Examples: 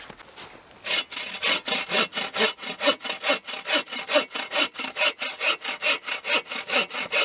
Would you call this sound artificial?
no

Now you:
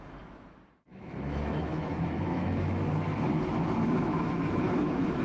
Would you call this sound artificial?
yes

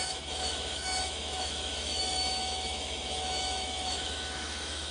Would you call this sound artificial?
yes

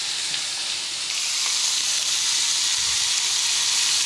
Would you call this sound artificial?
no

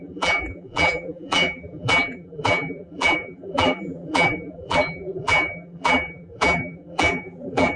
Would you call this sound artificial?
yes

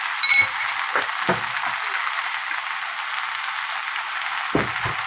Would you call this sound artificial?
no